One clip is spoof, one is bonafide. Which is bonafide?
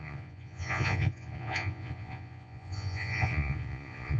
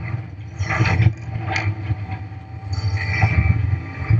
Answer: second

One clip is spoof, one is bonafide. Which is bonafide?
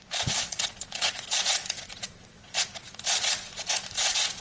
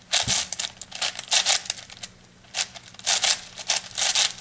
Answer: second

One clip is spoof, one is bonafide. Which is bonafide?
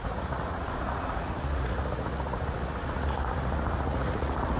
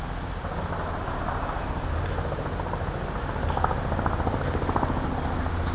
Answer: second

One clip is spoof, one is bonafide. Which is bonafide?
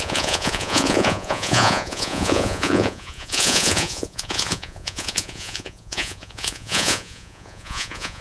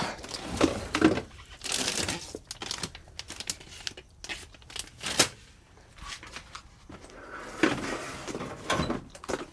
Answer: second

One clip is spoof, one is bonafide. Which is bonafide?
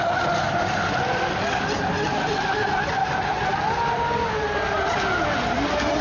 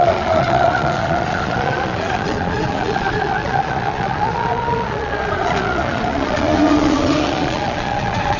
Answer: first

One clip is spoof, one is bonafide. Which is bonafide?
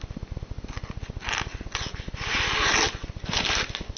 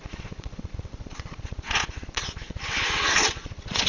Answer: first